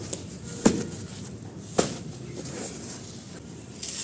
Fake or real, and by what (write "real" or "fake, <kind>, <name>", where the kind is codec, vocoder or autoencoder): real